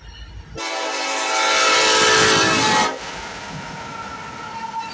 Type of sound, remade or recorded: recorded